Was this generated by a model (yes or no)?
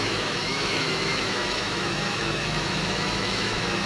yes